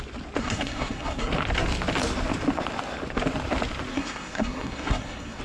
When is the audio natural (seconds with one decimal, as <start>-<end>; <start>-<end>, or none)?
0.0-0.4; 1.3-3.9